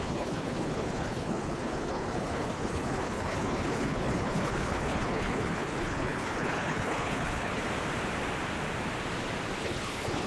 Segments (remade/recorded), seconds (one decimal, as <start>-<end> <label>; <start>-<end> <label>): 0.0-7.6 remade; 7.6-9.6 recorded; 9.6-10.3 remade